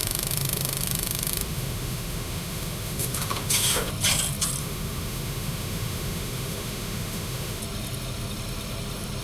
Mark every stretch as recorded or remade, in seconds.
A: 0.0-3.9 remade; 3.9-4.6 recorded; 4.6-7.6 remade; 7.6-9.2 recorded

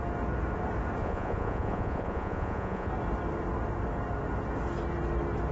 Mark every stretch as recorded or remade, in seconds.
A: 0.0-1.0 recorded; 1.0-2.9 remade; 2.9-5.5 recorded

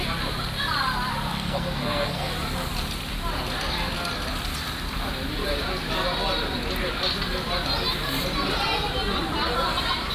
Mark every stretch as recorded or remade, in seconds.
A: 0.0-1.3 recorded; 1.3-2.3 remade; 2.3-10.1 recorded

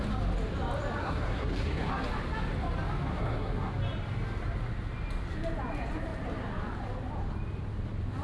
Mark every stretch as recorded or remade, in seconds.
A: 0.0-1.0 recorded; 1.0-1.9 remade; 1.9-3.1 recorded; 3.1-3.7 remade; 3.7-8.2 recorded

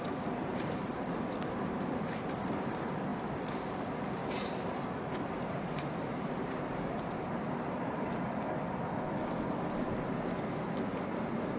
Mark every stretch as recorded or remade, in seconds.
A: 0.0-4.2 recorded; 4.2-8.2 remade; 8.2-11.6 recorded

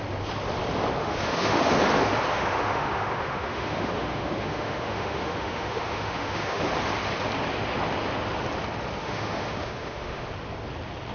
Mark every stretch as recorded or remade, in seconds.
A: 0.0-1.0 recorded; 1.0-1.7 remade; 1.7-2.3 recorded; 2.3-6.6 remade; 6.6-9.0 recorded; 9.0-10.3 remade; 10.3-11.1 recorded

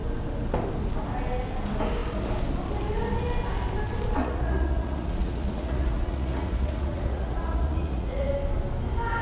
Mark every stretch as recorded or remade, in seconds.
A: 0.0-4.2 recorded; 4.2-8.3 remade; 8.3-9.2 recorded